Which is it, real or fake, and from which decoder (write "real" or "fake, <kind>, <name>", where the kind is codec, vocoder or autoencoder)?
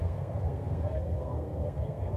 fake, codec, SNAC